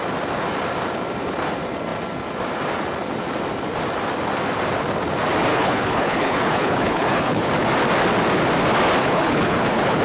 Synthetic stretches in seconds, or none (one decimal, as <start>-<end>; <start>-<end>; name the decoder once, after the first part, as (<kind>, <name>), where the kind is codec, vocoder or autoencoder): 5.5-7.5 (codec, HILCodec); 9.0-10.0